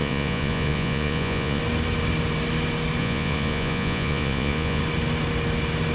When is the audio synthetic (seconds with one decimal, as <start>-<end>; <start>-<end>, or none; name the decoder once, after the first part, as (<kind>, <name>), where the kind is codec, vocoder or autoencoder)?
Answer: 0.0-1.6 (vocoder, Vocos); 3.0-4.8